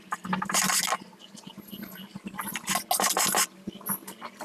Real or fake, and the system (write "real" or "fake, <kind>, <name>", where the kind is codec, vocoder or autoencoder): real